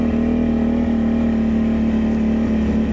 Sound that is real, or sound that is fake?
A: real